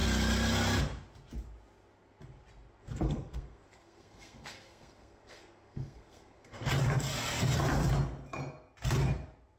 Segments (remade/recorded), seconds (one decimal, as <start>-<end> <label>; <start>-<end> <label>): 0.0-2.8 recorded; 2.8-6.7 remade; 6.7-9.6 recorded